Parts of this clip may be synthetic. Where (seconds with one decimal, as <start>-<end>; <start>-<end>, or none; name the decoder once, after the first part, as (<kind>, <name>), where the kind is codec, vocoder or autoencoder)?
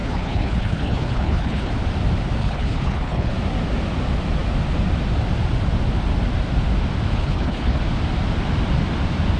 0.0-1.7 (codec, HILCodec); 2.4-3.3; 7.1-7.8